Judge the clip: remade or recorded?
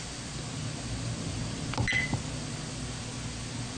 recorded